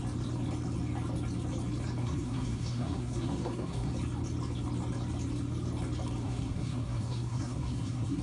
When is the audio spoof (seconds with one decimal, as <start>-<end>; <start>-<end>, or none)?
2.0-3.9; 6.2-8.2